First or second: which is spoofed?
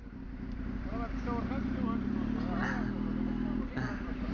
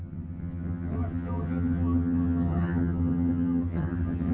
second